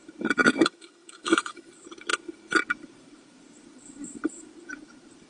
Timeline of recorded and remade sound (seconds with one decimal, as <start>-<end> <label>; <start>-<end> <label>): 0.0-0.4 recorded; 0.4-1.7 remade; 1.7-5.3 recorded